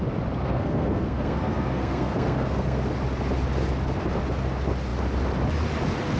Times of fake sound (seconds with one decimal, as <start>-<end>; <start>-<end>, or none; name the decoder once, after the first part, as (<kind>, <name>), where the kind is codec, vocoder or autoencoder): 0.4-2.9 (codec, SNAC)